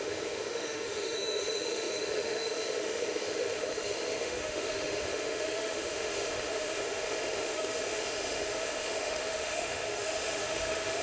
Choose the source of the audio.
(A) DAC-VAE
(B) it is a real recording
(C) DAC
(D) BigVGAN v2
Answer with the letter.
A